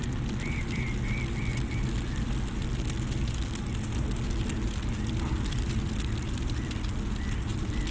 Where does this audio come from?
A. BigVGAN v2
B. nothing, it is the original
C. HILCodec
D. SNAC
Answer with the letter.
B